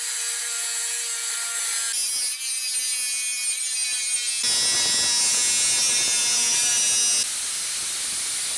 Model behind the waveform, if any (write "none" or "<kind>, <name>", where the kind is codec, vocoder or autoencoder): none